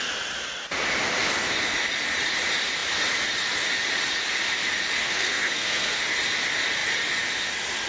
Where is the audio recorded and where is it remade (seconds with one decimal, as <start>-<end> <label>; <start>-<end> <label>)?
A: 0.0-5.0 recorded; 5.0-6.0 remade; 6.0-7.9 recorded